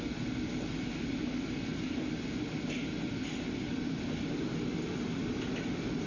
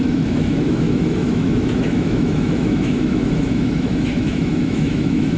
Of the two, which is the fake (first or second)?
second